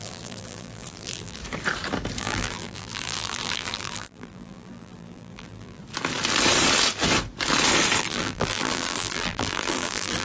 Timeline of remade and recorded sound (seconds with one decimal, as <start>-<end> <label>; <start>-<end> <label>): 0.0-1.4 remade; 1.4-2.2 recorded; 2.2-5.8 remade; 5.8-8.0 recorded; 8.0-10.2 remade